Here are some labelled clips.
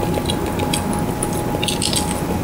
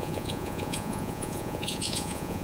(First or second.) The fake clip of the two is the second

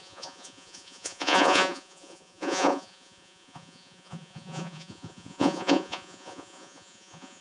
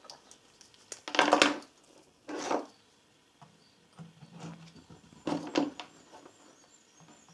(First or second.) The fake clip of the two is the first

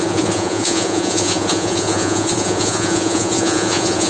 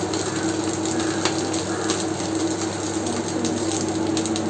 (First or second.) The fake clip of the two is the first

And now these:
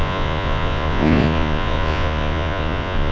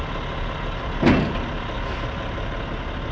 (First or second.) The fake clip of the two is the first